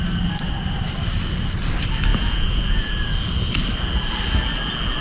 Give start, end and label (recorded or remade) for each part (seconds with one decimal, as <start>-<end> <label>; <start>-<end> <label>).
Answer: 0.0-2.1 recorded; 2.1-3.1 remade; 3.1-5.0 recorded